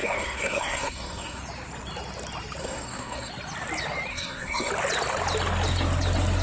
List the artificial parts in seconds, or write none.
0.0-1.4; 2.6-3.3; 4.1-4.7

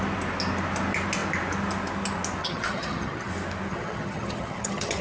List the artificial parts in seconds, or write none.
2.4-3.3; 3.7-5.0

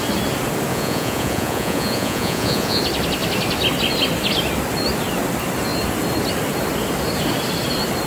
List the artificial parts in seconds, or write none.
0.7-2.8